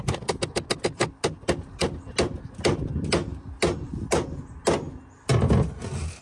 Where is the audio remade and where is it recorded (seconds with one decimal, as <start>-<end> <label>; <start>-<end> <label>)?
0.0-6.2 recorded